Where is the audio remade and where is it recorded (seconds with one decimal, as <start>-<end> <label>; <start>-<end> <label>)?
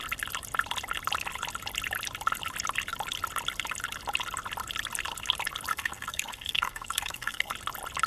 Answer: 0.0-5.7 recorded; 5.7-7.5 remade; 7.5-8.1 recorded